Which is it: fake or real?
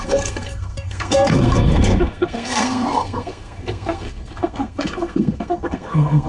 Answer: fake